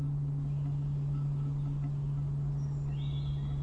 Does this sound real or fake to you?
real